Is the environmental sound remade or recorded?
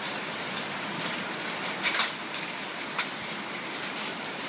recorded